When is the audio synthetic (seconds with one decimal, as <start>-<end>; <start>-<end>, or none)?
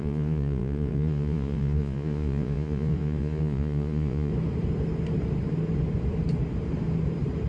0.0-4.3